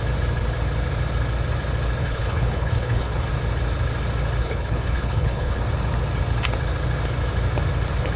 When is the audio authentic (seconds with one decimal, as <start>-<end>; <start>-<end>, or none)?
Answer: 0.0-2.0; 3.3-4.4; 5.6-8.2